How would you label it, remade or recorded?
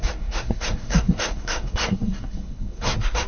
remade